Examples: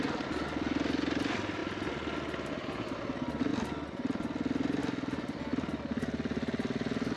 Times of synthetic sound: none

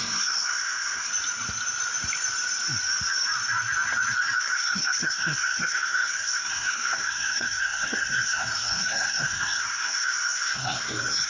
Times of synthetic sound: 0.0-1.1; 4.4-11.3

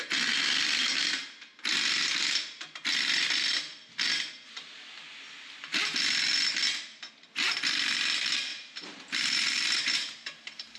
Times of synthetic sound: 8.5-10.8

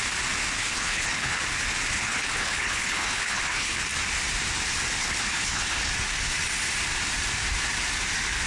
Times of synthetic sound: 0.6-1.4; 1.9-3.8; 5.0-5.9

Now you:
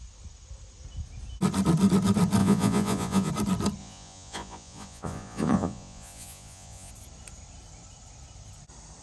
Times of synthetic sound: 2.4-3.3; 3.8-6.9

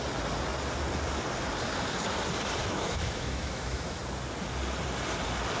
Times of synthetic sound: 2.6-4.0